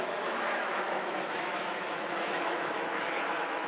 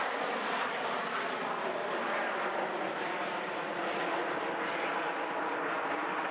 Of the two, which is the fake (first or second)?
first